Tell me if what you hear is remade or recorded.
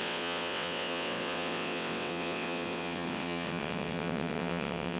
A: remade